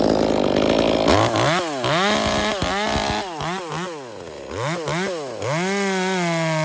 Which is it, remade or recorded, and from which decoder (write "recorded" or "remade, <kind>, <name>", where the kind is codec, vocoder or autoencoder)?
recorded